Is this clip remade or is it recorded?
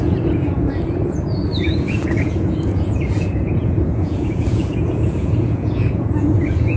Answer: remade